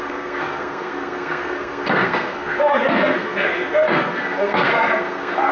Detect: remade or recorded remade